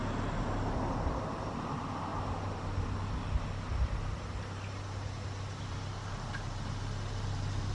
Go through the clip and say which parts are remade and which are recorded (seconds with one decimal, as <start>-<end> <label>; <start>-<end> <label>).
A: 0.0-7.7 recorded